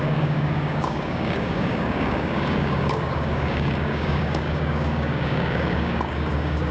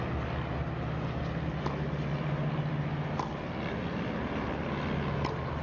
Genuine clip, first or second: second